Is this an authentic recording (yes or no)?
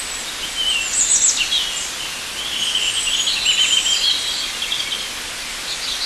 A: yes